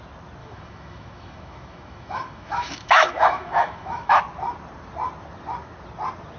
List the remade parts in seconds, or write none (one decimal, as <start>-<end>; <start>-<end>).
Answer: 0.4-4.2